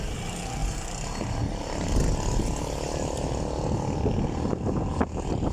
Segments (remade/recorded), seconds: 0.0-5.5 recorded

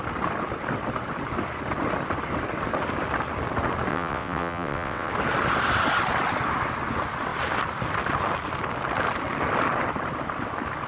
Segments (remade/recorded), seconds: 0.0-3.9 recorded; 3.9-5.1 remade; 5.1-10.9 recorded

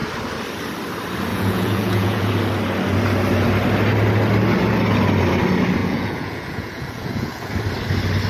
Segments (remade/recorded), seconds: 0.0-1.3 recorded; 1.3-2.3 remade; 2.3-5.8 recorded; 5.8-7.5 remade; 7.5-8.3 recorded

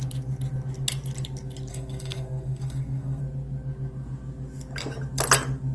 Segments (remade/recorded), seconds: 0.0-1.7 recorded; 1.7-3.2 remade; 3.2-5.7 recorded

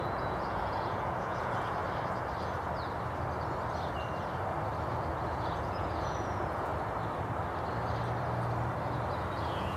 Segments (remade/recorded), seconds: 0.0-1.8 remade; 1.8-5.3 recorded; 5.3-6.7 remade; 6.7-9.4 recorded; 9.4-9.8 remade

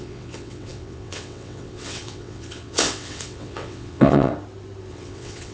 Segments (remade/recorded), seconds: 0.0-4.3 remade; 4.3-4.9 recorded; 4.9-5.5 remade